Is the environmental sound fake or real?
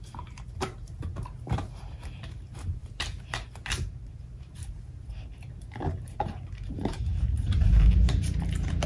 fake